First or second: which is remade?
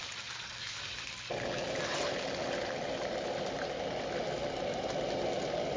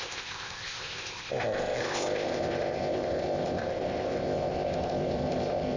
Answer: second